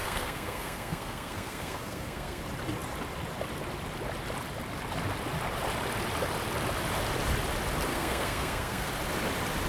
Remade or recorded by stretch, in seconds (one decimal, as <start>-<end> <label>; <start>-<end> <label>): 0.0-2.4 remade; 2.4-7.9 recorded; 7.9-8.9 remade; 8.9-9.7 recorded